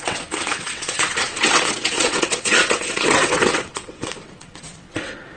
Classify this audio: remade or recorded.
remade